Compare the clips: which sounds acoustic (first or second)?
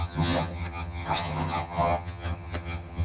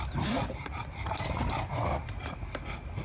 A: second